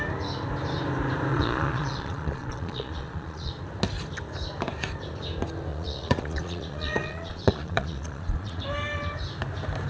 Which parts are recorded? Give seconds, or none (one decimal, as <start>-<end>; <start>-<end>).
0.0-1.3; 3.5-5.7; 8.6-9.9